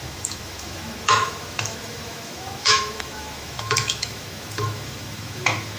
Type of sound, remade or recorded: remade